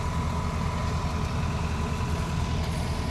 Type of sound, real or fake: real